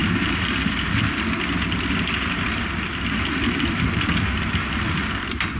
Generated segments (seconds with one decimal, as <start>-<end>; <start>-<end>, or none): none